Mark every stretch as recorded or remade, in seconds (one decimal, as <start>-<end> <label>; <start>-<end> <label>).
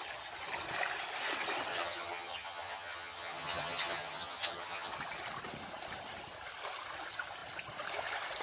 0.0-1.7 recorded; 1.7-4.9 remade; 4.9-8.4 recorded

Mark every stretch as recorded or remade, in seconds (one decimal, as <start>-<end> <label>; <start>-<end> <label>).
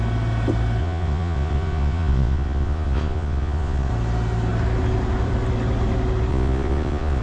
0.0-0.8 recorded; 0.8-3.9 remade; 3.9-6.3 recorded; 6.3-7.2 remade